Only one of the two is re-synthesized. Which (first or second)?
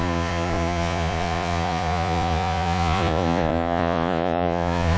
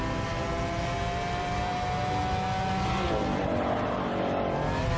first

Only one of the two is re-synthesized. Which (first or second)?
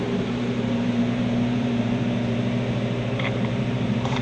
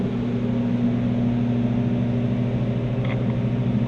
first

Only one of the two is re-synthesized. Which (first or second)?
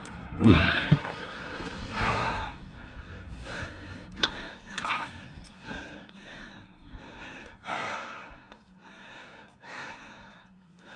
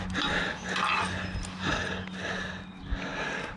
first